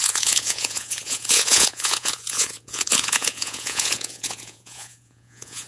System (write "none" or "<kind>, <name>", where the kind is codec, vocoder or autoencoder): vocoder, Vocos